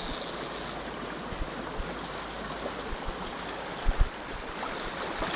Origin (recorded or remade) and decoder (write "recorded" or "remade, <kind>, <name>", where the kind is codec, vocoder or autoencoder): recorded